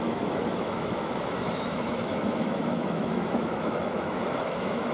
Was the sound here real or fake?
fake